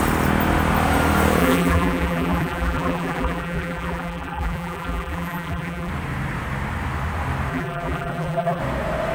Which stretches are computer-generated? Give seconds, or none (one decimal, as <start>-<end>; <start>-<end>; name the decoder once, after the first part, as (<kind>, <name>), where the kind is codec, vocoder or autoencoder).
1.4-5.9 (vocoder, BigVGAN v2); 7.5-8.6